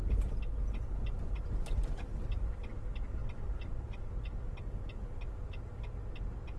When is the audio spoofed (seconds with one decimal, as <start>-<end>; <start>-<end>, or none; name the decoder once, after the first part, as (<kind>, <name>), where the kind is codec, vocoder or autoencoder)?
none